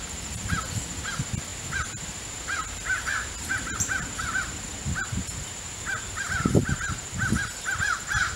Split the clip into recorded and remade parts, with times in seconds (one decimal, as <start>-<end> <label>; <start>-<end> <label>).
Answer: 0.0-8.4 recorded